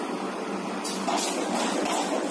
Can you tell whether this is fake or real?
real